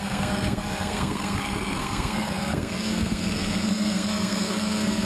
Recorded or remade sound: remade